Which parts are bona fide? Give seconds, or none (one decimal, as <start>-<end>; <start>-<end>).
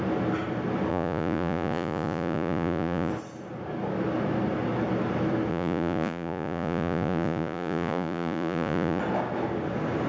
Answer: 0.0-0.9; 3.1-5.5; 9.0-10.1